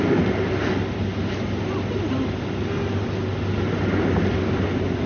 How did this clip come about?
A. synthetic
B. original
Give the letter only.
B